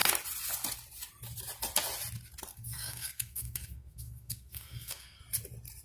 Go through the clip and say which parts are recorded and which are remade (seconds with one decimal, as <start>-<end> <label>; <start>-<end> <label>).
0.0-2.5 recorded; 2.5-5.2 remade; 5.2-5.8 recorded